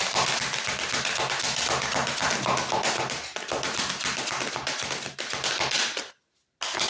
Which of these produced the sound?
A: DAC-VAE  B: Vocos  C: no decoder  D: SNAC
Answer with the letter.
C